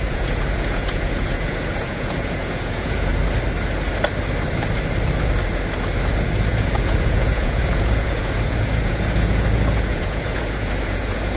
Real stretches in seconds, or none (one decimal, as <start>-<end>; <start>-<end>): 3.1-6.5